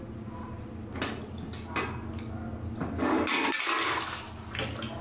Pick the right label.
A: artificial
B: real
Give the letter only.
B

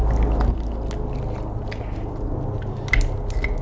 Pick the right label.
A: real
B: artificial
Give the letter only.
A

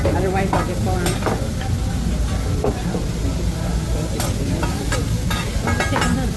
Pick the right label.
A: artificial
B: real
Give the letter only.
B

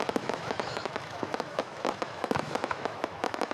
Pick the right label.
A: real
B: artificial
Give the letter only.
B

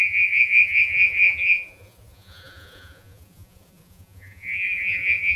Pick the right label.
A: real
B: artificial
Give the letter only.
B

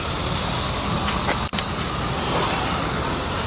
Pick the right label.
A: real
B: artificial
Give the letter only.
A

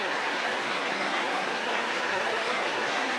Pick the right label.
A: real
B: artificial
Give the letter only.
B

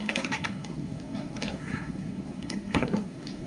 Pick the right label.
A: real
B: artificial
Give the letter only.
B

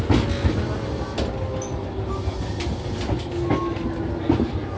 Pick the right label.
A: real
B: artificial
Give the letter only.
A